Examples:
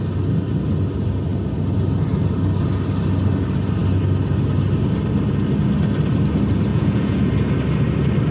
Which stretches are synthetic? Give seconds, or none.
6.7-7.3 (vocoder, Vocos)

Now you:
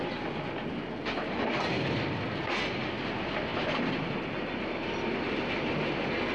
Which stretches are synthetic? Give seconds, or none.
none

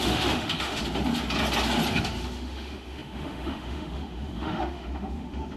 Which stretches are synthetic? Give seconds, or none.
0.0-0.8 (autoencoder, DAC-VAE); 1.9-5.6

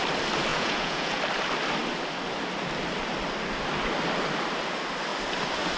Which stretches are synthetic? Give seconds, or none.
0.5-1.2 (vocoder, Vocos)

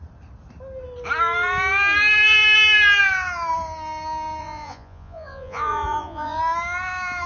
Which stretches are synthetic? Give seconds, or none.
4.4-6.4 (vocoder, Vocos)

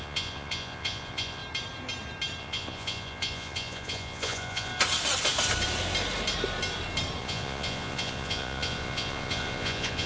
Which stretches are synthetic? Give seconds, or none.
0.0-1.4 (vocoder, Vocos); 2.4-4.7; 7.2-10.1

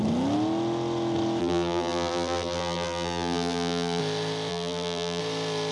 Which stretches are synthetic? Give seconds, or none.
1.4-4.0 (vocoder, BigVGAN v2); 4.5-5.2

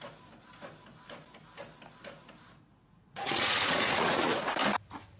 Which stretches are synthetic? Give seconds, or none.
2.8-4.4 (vocoder, Vocos)